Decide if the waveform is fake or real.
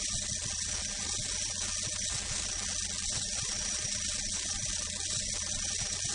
real